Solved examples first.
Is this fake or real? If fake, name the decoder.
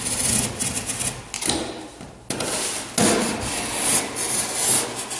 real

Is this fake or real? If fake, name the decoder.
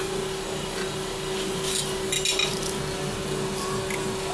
real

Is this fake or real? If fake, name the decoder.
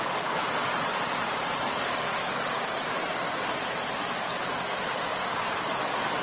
real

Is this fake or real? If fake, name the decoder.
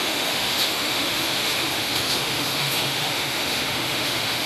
fake, autoencoder, DAC-VAE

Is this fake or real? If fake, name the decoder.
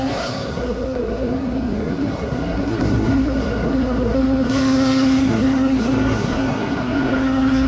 fake, codec, SNAC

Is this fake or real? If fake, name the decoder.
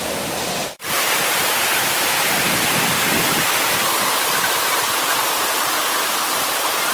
fake, vocoder, BigVGAN v2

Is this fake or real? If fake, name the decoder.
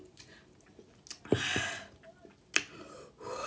real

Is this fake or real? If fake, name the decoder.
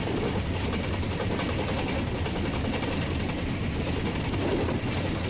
real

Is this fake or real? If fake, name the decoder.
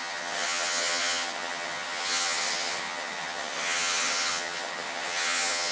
fake, vocoder, HiFi-GAN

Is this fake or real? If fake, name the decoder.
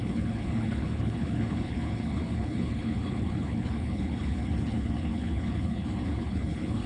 fake, codec, HILCodec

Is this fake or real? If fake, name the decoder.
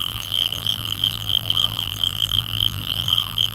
fake, vocoder, BigVGAN v2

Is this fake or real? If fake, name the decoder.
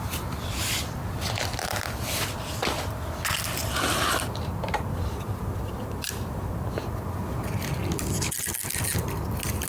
real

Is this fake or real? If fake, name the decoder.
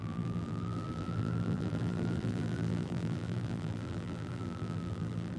fake, vocoder, BigVGAN v2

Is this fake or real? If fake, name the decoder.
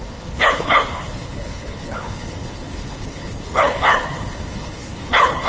fake, codec, HILCodec